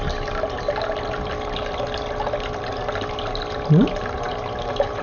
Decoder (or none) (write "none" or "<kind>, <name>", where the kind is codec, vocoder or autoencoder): none